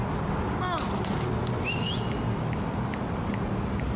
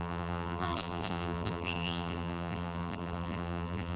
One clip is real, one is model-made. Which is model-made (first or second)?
second